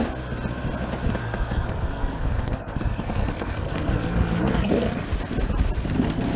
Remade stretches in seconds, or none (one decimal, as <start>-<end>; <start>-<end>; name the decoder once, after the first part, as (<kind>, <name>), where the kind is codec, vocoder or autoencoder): 1.2-5.0 (codec, SNAC)